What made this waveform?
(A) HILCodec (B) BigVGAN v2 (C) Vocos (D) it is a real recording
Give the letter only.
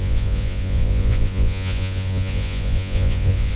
C